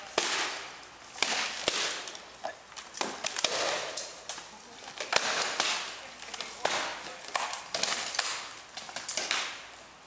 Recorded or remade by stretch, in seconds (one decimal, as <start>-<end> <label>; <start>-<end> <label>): 0.0-10.1 recorded